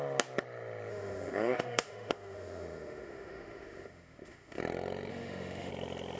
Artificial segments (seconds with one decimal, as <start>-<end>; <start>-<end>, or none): 0.9-4.6; 5.1-5.7

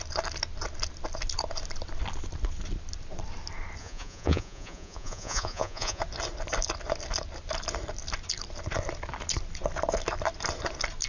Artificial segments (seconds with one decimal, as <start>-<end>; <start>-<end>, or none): 3.8-6.0

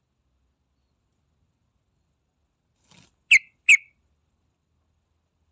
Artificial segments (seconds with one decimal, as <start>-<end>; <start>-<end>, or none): none

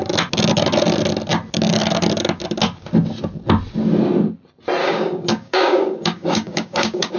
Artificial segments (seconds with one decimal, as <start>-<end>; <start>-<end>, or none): 4.8-7.2